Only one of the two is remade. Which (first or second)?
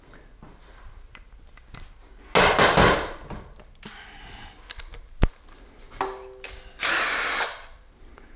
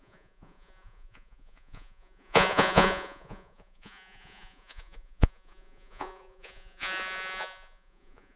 second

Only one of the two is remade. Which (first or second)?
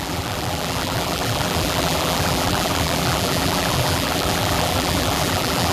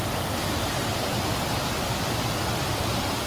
first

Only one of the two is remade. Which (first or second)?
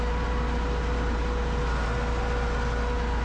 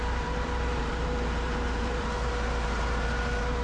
second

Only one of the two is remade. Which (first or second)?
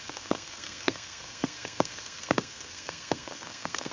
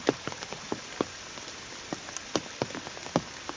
first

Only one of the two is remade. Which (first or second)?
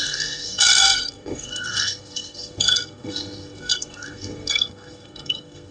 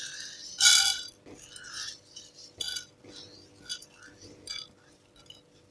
first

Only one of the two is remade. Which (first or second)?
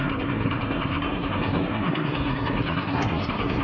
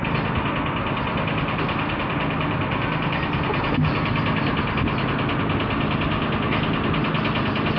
first